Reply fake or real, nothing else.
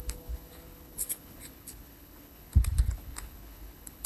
fake